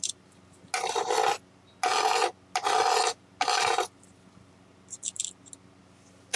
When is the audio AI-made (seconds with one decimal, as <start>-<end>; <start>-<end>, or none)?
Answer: none